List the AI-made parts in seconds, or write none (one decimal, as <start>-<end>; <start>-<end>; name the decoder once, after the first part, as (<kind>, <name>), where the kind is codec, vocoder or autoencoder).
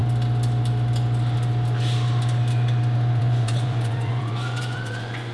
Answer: 3.2-5.3 (vocoder, Vocos)